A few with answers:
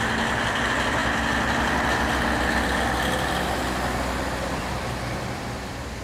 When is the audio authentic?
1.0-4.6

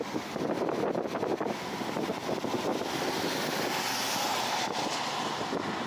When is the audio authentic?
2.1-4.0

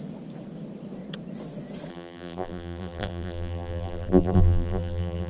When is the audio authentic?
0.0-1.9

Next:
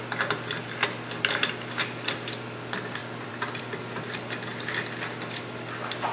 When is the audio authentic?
0.0-3.0; 3.6-6.1

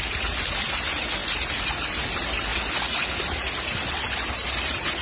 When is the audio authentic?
0.0-1.2; 2.0-5.0

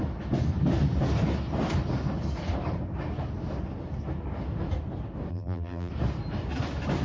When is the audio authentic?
0.0-5.3; 5.9-7.0

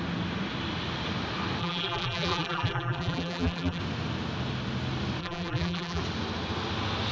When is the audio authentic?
0.0-1.6; 3.8-5.2; 6.0-7.1